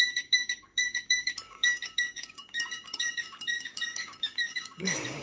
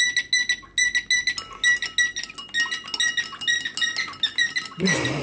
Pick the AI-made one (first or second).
first